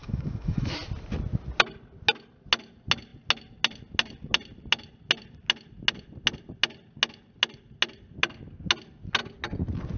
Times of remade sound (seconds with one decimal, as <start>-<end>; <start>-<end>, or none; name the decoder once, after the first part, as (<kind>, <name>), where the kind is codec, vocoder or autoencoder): 0.0-0.7 (autoencoder, DAC-VAE)